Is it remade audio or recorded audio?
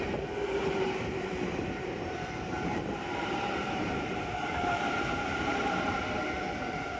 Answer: remade